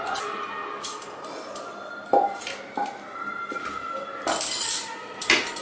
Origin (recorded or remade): recorded